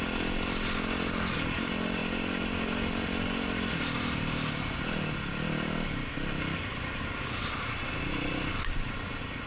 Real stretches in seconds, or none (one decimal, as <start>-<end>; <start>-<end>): 0.0-9.5